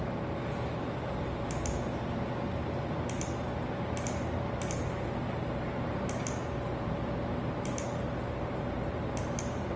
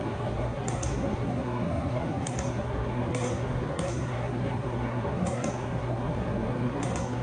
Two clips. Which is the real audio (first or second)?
first